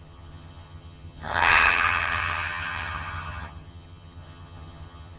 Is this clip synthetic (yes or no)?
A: yes